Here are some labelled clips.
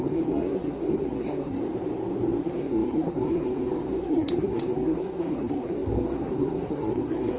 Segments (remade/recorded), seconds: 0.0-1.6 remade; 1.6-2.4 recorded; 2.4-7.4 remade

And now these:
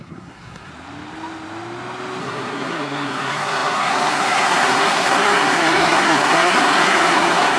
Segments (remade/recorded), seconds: 0.0-0.7 remade; 0.7-2.2 recorded; 2.2-7.6 remade

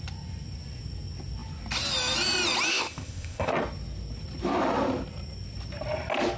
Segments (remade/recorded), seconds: 0.0-2.7 recorded; 2.7-3.5 remade; 3.5-6.4 recorded

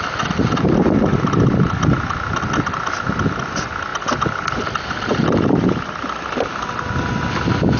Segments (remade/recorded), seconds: 0.0-7.8 recorded